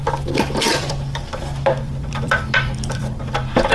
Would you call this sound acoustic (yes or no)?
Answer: no